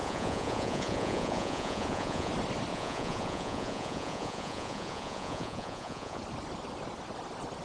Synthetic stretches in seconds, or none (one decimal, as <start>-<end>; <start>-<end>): 0.0-2.3; 2.7-6.2